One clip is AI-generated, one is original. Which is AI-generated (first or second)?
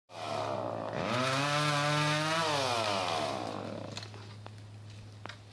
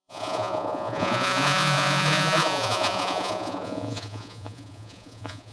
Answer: second